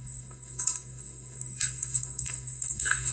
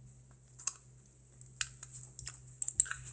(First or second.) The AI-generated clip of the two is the first